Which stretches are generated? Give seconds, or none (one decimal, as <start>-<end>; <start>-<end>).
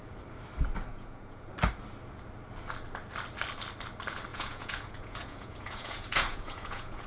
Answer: 0.9-1.5; 4.3-7.1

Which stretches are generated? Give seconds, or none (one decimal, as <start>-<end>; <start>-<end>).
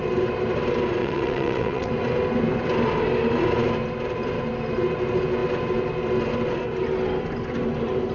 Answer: 1.0-1.9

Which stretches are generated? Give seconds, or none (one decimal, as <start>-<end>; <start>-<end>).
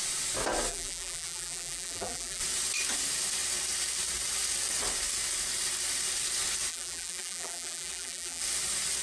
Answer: 0.7-2.4; 6.7-8.4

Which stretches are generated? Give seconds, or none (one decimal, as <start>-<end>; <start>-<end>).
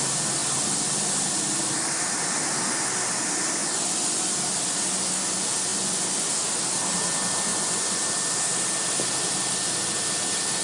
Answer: 3.6-4.3; 5.7-6.3; 7.5-8.0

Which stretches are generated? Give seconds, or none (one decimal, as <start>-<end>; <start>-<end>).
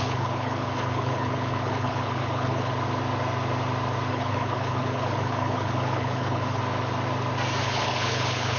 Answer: 0.0-2.7; 4.1-6.6; 7.6-8.6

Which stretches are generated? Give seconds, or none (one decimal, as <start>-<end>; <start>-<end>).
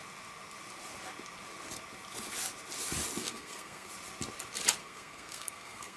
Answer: 3.2-3.9; 4.8-6.0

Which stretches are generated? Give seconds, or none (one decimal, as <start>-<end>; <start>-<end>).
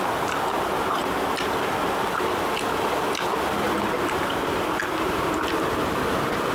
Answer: none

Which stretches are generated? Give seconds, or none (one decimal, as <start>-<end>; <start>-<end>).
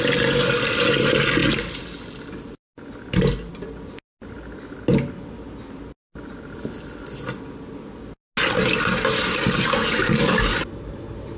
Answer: none